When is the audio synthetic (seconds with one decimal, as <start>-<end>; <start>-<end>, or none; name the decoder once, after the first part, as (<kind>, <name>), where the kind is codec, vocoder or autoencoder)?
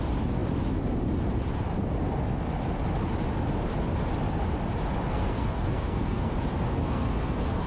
5.1-6.3 (codec, SNAC); 6.7-7.7